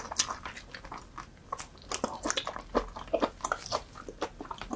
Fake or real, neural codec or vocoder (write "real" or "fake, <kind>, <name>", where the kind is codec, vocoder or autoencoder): real